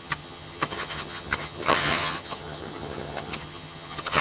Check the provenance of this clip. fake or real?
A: fake